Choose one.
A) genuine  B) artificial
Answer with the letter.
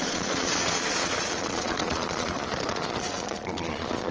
B